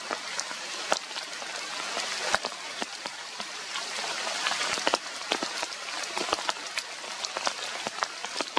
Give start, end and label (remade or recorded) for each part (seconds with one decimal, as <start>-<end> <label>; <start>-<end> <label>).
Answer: 0.0-2.9 recorded; 2.9-6.0 remade; 6.0-8.6 recorded